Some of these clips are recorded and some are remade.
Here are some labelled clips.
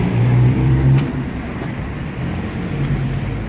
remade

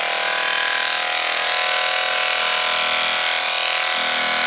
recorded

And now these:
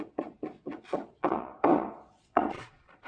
remade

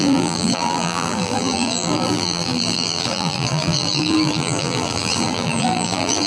remade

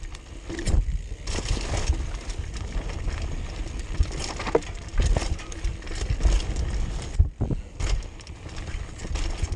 recorded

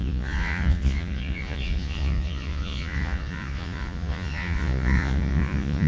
remade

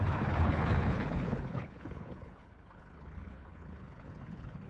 remade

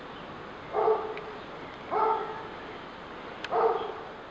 recorded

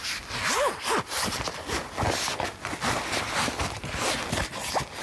recorded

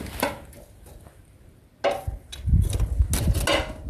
recorded